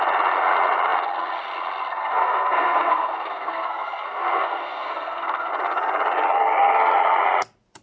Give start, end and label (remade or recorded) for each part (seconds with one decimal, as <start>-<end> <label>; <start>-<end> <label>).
0.0-2.0 recorded; 2.0-5.5 remade; 5.5-7.8 recorded